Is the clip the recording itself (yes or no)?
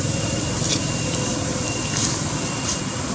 yes